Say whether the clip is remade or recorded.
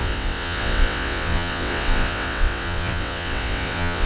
remade